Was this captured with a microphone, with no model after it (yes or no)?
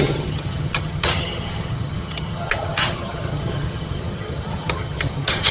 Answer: no